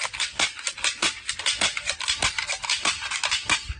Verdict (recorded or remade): recorded